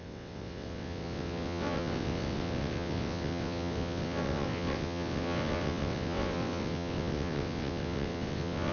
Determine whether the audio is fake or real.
fake